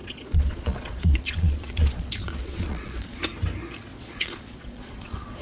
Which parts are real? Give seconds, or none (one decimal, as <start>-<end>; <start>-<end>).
3.2-3.9